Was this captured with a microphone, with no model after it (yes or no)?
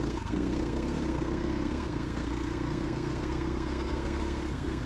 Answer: no